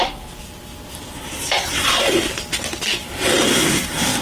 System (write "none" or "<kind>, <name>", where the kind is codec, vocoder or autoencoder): none